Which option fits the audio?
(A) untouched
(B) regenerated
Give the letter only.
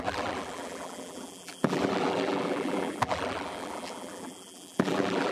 B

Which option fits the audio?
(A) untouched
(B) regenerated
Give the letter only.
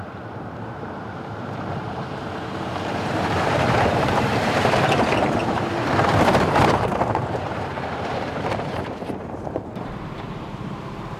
B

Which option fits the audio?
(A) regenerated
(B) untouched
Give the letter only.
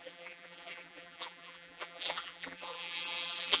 A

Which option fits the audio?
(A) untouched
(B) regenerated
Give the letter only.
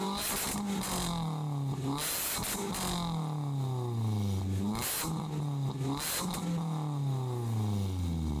A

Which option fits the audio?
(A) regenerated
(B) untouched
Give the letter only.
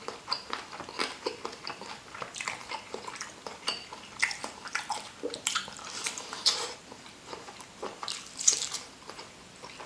A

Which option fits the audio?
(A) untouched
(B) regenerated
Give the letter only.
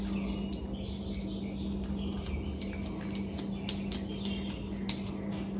A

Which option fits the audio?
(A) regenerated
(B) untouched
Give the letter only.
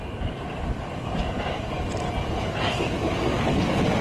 B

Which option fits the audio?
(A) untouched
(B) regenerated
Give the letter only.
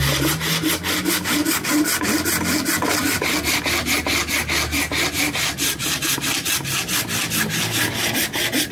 A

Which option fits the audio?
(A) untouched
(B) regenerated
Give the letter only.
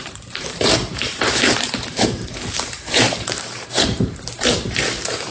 B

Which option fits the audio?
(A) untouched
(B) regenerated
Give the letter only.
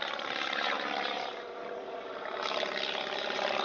B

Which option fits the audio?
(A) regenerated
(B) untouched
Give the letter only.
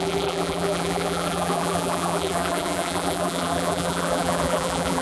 A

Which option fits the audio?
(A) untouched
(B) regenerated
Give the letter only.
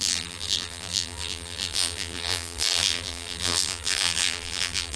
B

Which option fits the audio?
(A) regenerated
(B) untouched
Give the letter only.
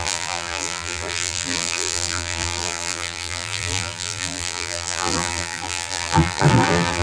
A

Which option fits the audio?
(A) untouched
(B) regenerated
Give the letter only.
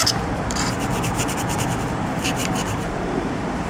B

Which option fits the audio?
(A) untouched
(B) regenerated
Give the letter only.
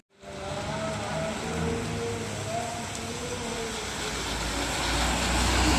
A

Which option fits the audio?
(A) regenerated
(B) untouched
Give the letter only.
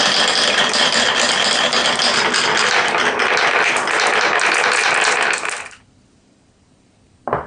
B